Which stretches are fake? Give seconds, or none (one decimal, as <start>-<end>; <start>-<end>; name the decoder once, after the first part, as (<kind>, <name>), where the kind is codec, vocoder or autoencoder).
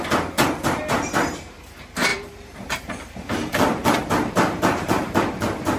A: 2.1-5.8 (vocoder, BigVGAN v2)